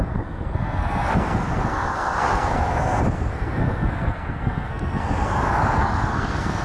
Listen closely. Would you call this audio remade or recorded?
remade